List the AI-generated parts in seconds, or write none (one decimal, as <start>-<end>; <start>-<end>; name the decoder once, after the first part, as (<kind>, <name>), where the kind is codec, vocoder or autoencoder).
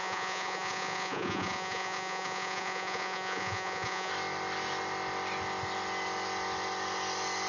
0.0-4.1 (vocoder, Vocos)